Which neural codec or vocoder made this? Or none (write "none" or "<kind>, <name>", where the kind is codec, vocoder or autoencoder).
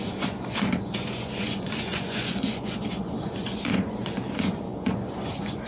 vocoder, Vocos